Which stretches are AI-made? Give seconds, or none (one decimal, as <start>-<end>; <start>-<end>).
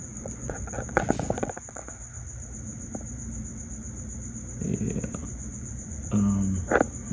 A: 0.0-1.9; 5.2-6.1